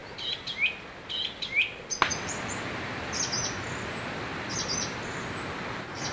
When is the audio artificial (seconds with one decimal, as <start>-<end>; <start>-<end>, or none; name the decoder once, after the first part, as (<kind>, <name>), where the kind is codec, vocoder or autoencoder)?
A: none